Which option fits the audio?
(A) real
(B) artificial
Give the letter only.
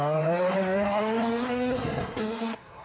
B